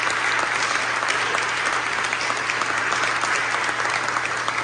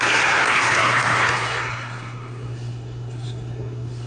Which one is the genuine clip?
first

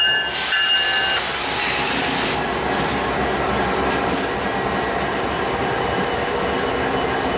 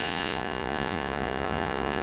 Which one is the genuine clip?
first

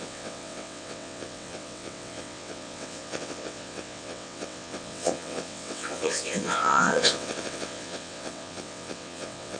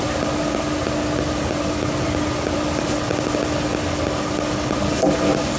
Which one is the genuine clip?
second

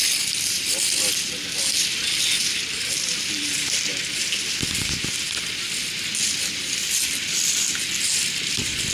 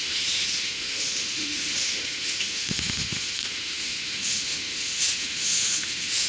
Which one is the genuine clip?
first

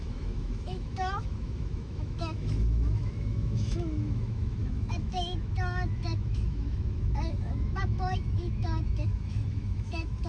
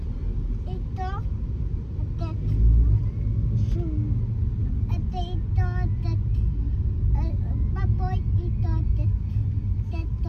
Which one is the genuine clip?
second